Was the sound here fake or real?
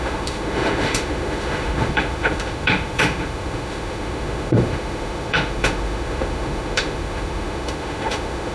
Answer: fake